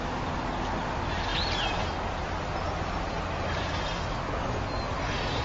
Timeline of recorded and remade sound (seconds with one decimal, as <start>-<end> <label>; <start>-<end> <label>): 0.0-5.4 recorded

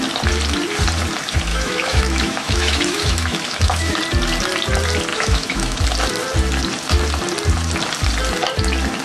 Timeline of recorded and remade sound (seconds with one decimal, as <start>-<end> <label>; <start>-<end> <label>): 0.0-1.5 recorded; 1.5-4.0 remade; 4.0-5.1 recorded; 5.1-5.8 remade; 5.8-9.0 recorded

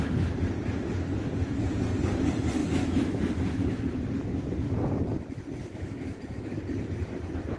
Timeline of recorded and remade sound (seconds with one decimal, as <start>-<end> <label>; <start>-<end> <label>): 0.0-2.6 recorded; 2.6-3.8 remade; 3.8-5.6 recorded; 5.6-6.2 remade; 6.2-7.6 recorded

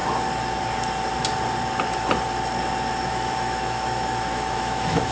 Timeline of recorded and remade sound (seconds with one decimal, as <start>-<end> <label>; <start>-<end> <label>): 0.0-2.9 recorded; 2.9-5.1 remade

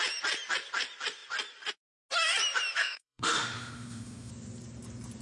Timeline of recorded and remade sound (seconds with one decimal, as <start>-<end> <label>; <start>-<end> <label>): 0.0-2.8 recorded; 2.8-4.3 remade; 4.3-5.2 recorded